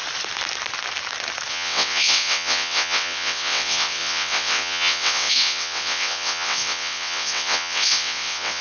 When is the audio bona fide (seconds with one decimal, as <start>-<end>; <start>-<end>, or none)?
0.0-1.5